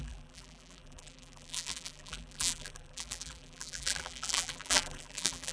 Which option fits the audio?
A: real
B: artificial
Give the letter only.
B